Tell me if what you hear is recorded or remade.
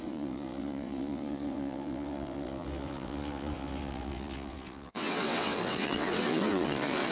remade